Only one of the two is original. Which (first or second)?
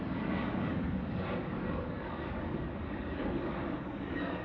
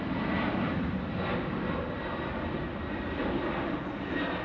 second